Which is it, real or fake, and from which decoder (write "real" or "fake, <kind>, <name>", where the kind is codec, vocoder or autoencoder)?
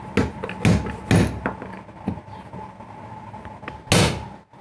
real